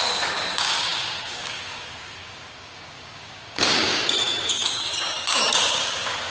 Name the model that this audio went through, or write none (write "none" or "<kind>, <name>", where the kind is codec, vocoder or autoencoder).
codec, DAC